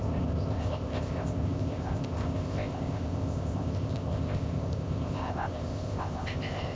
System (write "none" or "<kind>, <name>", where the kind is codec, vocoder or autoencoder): codec, ZipCodec